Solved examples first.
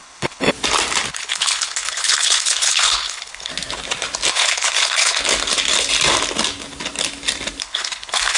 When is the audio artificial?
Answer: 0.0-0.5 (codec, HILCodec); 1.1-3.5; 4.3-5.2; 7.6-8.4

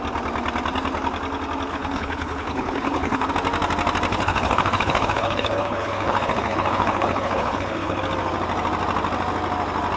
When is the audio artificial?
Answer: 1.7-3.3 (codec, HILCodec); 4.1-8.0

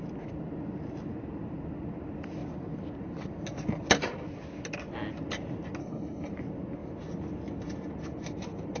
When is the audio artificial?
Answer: 5.8-6.3 (codec, HILCodec)

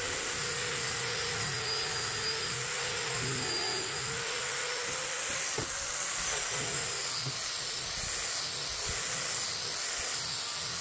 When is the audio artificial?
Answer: none

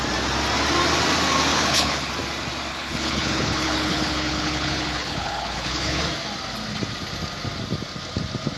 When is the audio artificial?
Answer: 1.5-2.1 (codec, HILCodec); 2.7-6.1